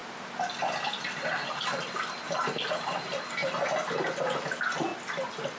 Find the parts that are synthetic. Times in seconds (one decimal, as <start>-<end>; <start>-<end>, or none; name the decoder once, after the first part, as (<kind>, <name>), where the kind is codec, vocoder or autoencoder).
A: none